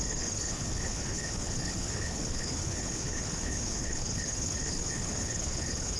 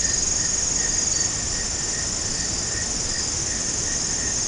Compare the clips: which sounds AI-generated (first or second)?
first